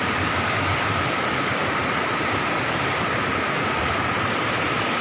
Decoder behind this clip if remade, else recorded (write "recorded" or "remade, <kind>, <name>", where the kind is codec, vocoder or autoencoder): remade, vocoder, BigVGAN v2